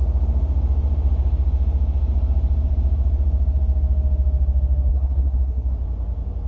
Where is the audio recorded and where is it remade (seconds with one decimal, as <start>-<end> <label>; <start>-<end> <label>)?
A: 0.0-4.9 recorded; 4.9-5.7 remade; 5.7-6.5 recorded